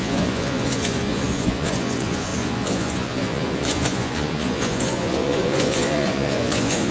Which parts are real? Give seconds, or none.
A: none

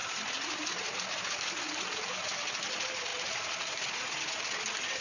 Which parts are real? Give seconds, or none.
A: 0.0-5.0